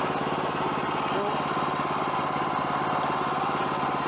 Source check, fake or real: real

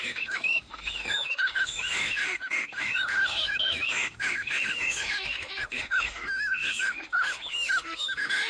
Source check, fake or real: fake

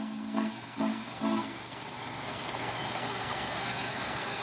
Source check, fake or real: fake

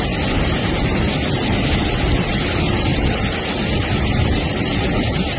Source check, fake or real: real